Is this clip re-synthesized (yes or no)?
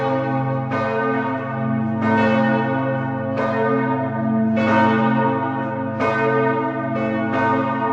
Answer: no